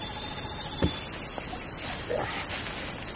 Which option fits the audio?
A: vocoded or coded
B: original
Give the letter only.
B